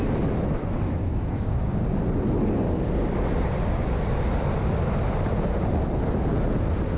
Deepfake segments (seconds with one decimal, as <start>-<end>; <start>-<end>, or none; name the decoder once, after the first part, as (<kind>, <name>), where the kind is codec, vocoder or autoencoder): 1.0-1.9 (codec, DAC)